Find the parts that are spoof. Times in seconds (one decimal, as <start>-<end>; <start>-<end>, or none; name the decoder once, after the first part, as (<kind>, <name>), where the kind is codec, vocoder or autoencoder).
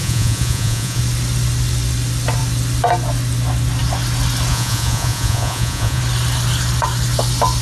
0.0-1.0 (vocoder, Vocos); 4.5-6.0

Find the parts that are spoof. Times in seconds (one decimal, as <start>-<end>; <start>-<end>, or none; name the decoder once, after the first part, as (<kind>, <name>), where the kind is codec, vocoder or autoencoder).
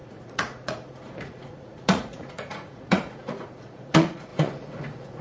0.0-5.2 (vocoder, Vocos)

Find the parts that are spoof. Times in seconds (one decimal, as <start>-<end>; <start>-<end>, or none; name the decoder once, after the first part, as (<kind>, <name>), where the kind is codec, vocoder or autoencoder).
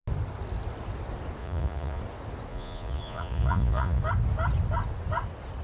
1.4-2.0 (vocoder, Vocos); 2.5-4.0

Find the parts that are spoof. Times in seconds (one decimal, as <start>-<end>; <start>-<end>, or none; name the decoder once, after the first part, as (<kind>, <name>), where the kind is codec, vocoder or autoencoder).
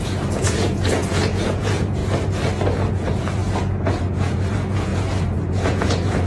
0.0-2.0 (vocoder, Vocos); 2.9-3.4; 3.9-6.3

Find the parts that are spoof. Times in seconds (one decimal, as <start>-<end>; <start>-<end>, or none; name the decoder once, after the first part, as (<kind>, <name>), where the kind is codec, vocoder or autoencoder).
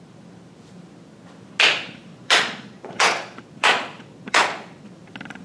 2.1-4.9 (vocoder, Vocos)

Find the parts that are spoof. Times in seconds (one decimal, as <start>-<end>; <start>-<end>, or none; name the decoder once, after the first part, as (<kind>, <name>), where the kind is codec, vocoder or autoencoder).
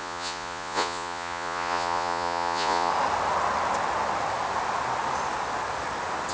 0.0-2.9 (vocoder, Vocos)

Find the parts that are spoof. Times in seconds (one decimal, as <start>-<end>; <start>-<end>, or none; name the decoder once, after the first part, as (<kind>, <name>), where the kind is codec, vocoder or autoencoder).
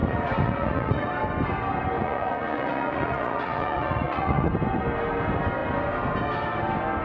0.0-1.1 (vocoder, Vocos); 2.0-4.5